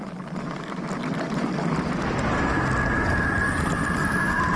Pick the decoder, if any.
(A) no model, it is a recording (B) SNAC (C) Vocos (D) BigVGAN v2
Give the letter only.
A